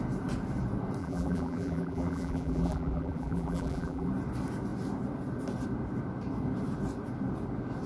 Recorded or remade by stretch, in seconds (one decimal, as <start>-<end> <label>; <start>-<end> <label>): 0.0-1.0 recorded; 1.0-4.1 remade; 4.1-7.9 recorded